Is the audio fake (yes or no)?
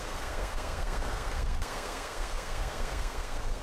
yes